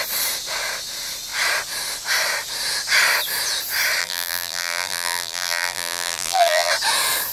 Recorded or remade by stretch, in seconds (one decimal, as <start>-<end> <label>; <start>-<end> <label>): 0.0-4.0 recorded; 4.0-6.7 remade; 6.7-7.3 recorded